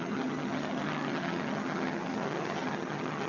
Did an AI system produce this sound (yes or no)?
yes